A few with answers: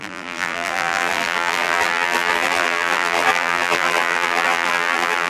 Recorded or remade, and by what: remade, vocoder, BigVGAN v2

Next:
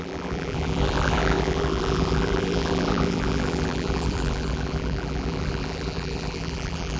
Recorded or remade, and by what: remade, vocoder, BigVGAN v2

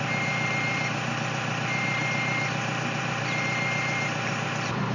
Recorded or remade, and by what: remade, vocoder, BigVGAN v2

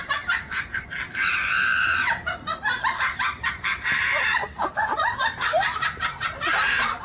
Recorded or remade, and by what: remade, vocoder, BigVGAN v2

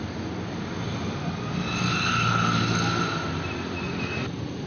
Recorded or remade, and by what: recorded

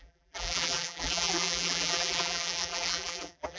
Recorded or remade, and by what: remade, vocoder, BigVGAN v2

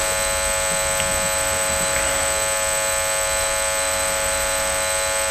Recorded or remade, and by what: recorded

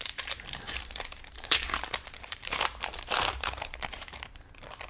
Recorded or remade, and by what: remade, vocoder, BigVGAN v2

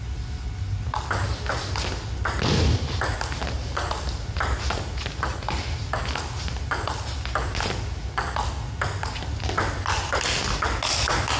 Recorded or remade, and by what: recorded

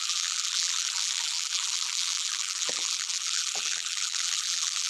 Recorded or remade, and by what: remade, vocoder, BigVGAN v2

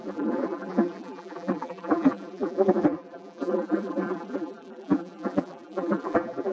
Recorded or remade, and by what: remade, vocoder, BigVGAN v2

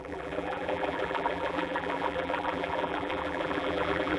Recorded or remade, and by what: remade, vocoder, BigVGAN v2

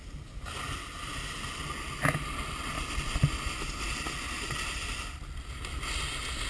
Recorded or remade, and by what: recorded